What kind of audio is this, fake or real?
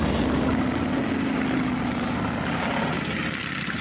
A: real